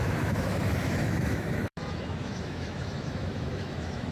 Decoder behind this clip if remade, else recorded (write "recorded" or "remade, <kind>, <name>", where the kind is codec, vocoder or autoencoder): remade, autoencoder, DAC-VAE